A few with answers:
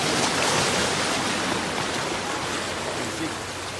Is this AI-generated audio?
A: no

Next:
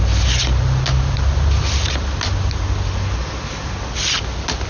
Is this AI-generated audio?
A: no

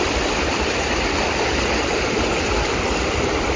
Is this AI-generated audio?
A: no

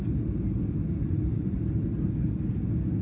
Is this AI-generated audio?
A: no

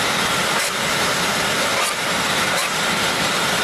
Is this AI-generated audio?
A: yes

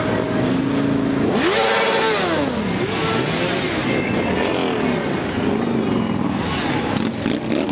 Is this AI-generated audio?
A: no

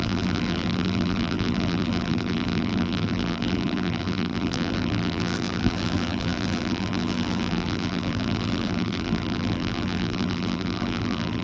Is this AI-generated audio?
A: yes